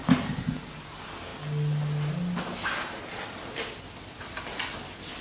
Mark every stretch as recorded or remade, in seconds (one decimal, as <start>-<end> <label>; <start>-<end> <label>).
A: 0.0-5.2 recorded

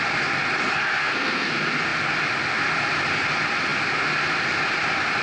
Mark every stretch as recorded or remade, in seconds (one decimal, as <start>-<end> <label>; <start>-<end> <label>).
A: 0.0-1.0 recorded; 1.0-1.5 remade; 1.5-5.2 recorded

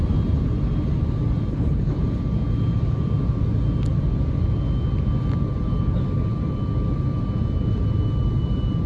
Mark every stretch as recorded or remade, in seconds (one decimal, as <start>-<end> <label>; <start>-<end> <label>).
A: 0.0-1.5 recorded; 1.5-2.0 remade; 2.0-8.9 recorded

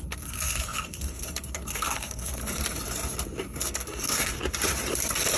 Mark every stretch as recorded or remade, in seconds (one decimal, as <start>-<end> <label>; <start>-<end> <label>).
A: 0.0-2.6 remade; 2.6-3.4 recorded; 3.4-4.3 remade; 4.3-5.4 recorded